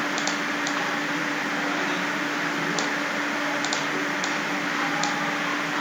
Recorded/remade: recorded